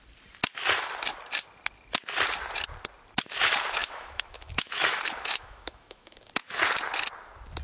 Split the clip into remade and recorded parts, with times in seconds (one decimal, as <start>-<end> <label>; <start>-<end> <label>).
0.0-3.8 recorded; 3.8-6.2 remade; 6.2-7.6 recorded